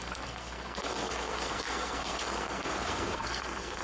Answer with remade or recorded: remade